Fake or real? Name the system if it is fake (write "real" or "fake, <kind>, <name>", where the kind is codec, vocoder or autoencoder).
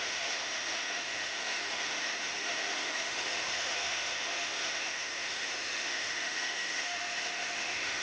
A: fake, autoencoder, DAC-VAE